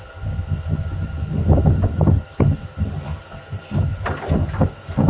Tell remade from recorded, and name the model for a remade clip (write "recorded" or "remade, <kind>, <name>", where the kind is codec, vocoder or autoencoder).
recorded